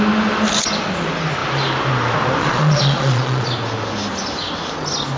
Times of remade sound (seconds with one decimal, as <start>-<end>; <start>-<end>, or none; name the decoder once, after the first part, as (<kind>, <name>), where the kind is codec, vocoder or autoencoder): 2.4-3.5 (vocoder, Vocos)